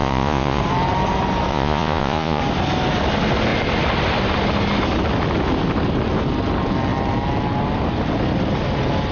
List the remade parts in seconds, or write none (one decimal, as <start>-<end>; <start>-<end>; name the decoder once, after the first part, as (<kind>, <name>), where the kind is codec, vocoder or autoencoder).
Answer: 0.0-0.6 (vocoder, Vocos); 1.5-2.4